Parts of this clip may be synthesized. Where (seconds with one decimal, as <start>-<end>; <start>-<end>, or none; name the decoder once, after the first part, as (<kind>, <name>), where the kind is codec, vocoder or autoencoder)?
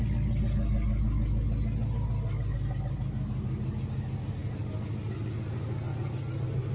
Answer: none